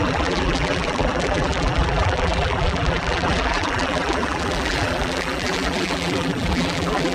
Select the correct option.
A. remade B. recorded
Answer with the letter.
A